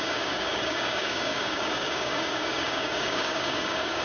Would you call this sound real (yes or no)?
no